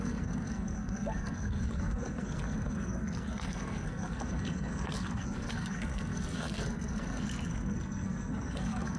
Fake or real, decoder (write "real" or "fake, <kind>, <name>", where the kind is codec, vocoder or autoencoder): fake, codec, SNAC